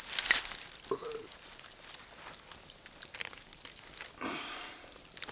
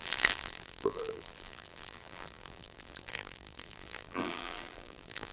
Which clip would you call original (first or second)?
first